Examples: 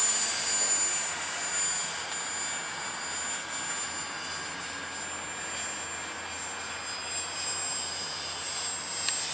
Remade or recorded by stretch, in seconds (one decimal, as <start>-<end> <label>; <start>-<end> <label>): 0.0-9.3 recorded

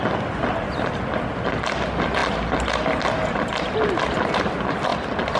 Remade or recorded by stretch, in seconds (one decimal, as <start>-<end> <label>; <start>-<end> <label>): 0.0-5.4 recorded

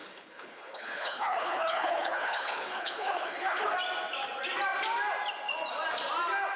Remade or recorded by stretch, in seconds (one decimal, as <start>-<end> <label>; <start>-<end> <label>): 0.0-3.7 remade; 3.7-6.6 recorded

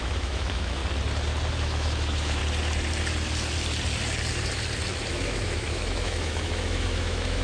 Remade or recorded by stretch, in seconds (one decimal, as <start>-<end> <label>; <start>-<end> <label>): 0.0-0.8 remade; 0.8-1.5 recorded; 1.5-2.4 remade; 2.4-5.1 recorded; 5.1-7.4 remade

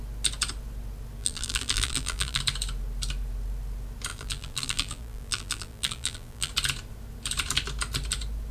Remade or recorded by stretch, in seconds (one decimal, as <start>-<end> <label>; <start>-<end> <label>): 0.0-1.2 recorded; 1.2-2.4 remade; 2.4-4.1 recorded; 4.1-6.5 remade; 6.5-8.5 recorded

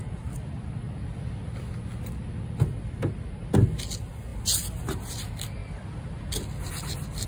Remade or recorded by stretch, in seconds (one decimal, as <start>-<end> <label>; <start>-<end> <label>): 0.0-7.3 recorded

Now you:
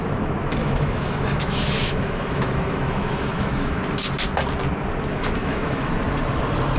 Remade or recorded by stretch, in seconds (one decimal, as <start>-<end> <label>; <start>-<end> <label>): 0.0-0.6 recorded; 0.6-3.8 remade; 3.8-5.1 recorded; 5.1-5.9 remade; 5.9-6.8 recorded

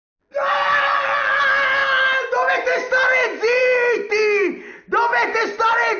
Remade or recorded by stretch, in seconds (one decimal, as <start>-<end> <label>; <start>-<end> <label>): 0.0-6.0 recorded